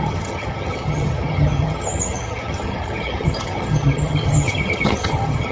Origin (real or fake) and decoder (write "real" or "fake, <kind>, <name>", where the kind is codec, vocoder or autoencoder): fake, vocoder, HiFi-GAN